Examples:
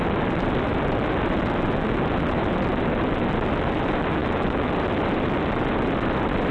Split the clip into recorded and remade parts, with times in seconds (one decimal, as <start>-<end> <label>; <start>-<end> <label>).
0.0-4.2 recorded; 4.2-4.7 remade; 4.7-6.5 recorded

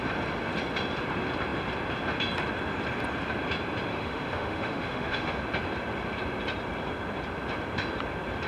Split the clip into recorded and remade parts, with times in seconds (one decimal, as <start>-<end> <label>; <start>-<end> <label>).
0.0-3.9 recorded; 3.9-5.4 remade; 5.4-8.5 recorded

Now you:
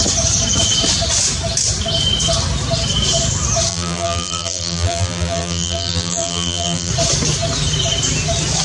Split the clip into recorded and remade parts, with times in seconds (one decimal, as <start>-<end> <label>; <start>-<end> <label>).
0.0-3.7 recorded; 3.7-6.9 remade; 6.9-8.6 recorded